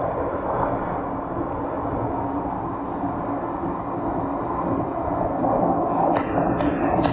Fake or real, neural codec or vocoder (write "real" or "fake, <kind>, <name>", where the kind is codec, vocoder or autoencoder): real